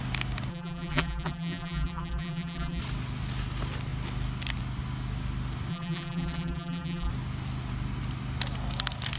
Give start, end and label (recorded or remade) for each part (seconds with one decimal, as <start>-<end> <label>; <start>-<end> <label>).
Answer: 0.0-0.5 recorded; 0.5-2.8 remade; 2.8-5.7 recorded; 5.7-7.1 remade; 7.1-9.2 recorded